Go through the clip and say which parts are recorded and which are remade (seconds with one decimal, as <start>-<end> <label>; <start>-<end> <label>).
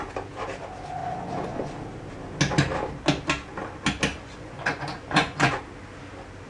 0.0-1.0 recorded; 1.0-1.7 remade; 1.7-4.1 recorded; 4.1-5.6 remade; 5.6-6.5 recorded